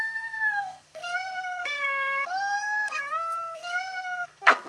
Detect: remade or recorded remade